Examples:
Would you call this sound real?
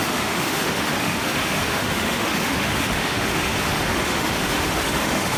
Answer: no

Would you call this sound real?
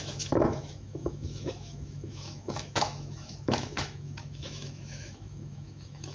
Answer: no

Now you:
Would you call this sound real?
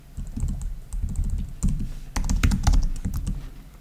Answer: yes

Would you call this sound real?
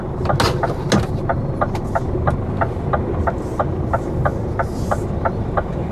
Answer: yes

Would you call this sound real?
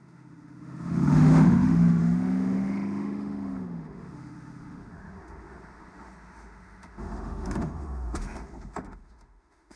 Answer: no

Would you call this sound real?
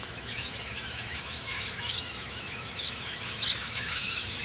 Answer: no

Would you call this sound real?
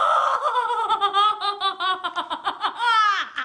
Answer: yes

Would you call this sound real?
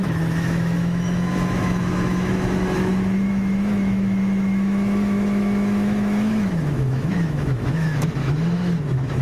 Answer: no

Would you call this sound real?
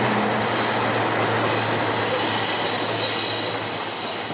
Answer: yes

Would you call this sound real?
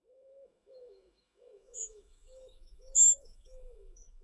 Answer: no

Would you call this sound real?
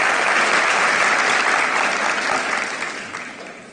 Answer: yes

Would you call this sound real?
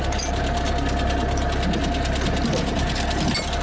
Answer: yes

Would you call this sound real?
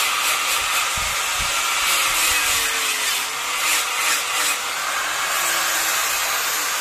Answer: yes